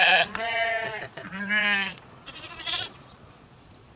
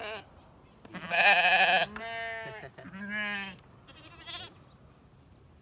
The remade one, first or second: first